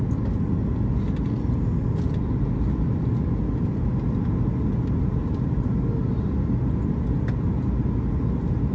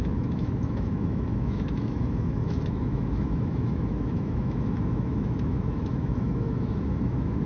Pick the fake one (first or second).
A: second